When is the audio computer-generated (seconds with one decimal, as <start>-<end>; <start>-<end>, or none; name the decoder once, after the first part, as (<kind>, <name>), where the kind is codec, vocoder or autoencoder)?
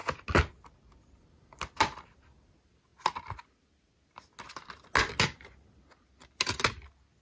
none